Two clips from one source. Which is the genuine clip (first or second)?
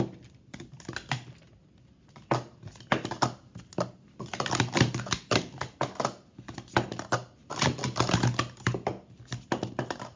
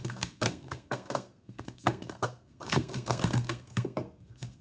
first